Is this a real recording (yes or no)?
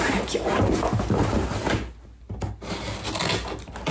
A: yes